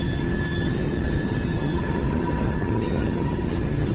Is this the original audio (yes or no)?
no